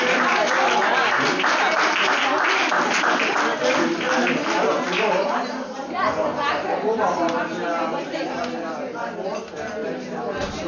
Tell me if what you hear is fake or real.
real